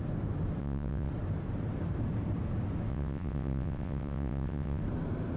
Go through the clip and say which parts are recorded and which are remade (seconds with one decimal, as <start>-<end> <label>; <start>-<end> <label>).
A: 0.0-0.6 recorded; 0.6-1.1 remade; 1.1-2.9 recorded; 2.9-4.8 remade; 4.8-5.4 recorded